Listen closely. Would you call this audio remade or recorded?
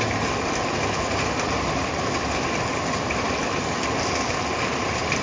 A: recorded